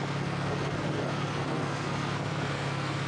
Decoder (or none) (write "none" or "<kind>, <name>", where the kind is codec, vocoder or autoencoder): codec, SNAC